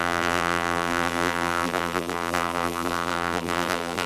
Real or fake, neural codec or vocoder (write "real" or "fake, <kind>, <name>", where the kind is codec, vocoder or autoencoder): fake, vocoder, BigVGAN v2